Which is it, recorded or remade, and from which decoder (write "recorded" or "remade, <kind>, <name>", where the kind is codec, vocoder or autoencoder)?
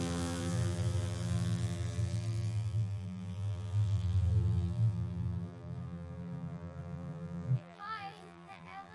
remade, vocoder, BigVGAN v2